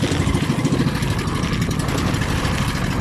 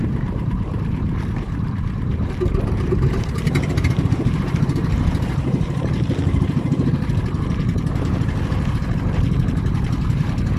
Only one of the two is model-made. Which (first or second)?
second